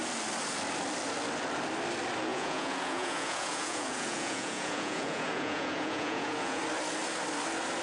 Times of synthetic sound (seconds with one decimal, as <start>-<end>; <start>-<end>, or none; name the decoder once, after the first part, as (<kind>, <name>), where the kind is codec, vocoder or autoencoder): 2.3-6.6 (vocoder, Vocos)